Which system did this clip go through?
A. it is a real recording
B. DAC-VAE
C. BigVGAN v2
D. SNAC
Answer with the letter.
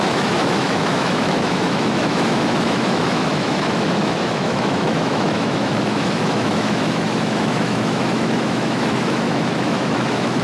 B